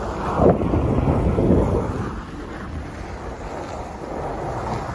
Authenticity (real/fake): real